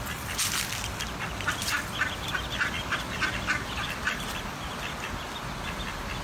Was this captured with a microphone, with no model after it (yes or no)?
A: yes